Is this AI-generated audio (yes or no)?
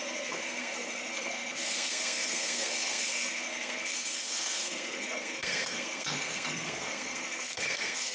yes